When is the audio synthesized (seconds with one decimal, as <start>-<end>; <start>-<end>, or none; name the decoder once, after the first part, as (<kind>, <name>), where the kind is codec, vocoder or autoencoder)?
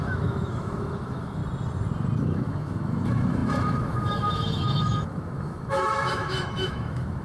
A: 0.0-1.4 (autoencoder, DAC-VAE); 2.2-7.2